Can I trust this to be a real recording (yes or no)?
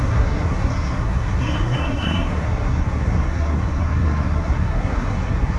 no